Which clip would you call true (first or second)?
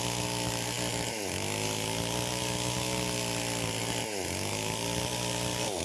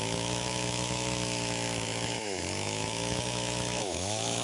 first